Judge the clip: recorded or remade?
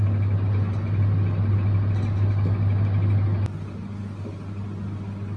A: recorded